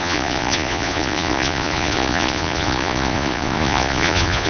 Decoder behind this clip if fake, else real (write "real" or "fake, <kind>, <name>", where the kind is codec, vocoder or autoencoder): fake, vocoder, Vocos